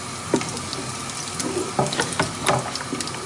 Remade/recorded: recorded